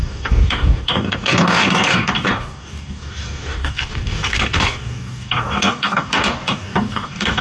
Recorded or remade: remade